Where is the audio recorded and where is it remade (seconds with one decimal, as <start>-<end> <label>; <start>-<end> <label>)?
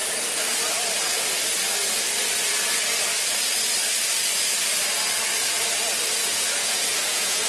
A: 0.0-6.6 recorded; 6.6-7.5 remade